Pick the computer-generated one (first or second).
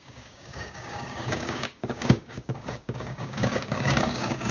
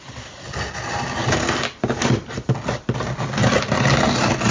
first